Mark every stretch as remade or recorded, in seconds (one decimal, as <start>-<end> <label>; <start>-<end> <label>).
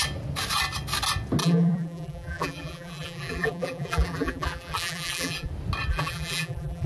0.0-1.4 recorded; 1.4-5.5 remade; 5.5-5.9 recorded; 5.9-6.9 remade